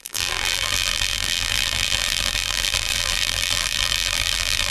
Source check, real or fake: fake